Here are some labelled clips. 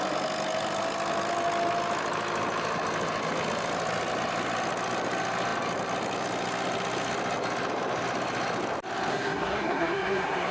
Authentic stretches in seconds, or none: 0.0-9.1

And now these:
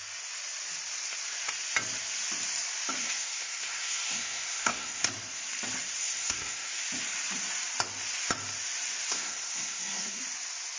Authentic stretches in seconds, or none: 0.0-3.0; 5.1-6.0; 6.8-9.1; 10.2-10.8

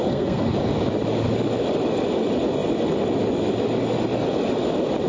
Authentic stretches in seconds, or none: 0.5-5.1

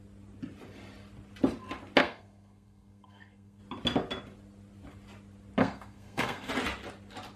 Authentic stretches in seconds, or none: 0.0-2.0; 3.6-5.6; 6.5-7.4

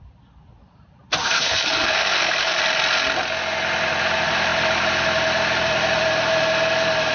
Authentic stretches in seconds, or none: 0.0-1.2; 2.6-7.1

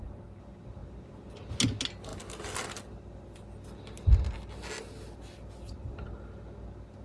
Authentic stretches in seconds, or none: 0.0-7.0

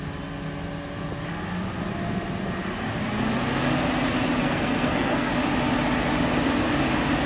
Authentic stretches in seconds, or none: 0.0-4.4; 5.3-7.3

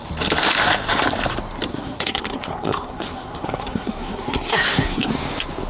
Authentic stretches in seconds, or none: 0.0-1.7; 5.1-5.7